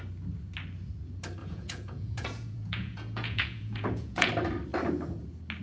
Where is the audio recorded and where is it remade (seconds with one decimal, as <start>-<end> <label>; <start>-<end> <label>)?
0.0-1.4 recorded; 1.4-4.3 remade; 4.3-5.6 recorded